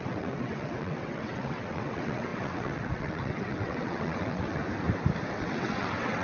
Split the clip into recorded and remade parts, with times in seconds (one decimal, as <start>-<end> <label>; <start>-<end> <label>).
0.0-4.6 remade; 4.6-5.3 recorded; 5.3-6.2 remade